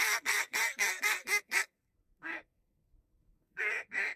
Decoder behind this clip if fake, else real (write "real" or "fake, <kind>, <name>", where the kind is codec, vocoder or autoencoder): fake, codec, SNAC